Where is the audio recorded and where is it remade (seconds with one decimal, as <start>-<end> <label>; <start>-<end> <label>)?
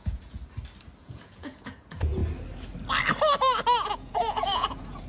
0.0-0.4 remade; 0.4-1.0 recorded; 1.0-2.2 remade; 2.2-3.9 recorded; 3.9-5.1 remade